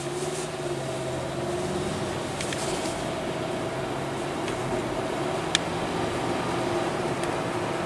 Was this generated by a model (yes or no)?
no